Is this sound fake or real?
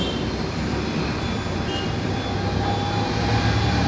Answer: real